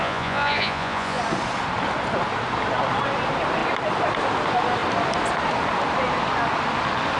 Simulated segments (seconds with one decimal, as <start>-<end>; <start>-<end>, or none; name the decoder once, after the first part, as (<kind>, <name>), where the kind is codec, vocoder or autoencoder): 0.0-1.2 (vocoder, Vocos)